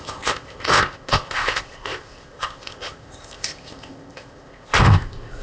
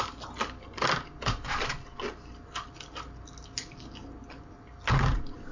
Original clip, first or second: second